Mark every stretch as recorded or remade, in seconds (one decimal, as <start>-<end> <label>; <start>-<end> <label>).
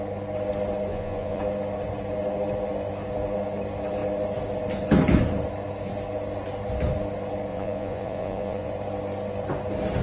0.0-0.9 recorded; 0.9-1.4 remade; 1.4-7.5 recorded; 7.5-8.7 remade; 8.7-10.0 recorded